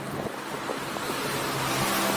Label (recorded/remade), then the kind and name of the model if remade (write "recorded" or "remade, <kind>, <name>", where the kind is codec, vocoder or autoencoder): recorded